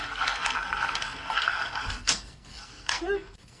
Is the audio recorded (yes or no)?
no